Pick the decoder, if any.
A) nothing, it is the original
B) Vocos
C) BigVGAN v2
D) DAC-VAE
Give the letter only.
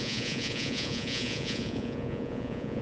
B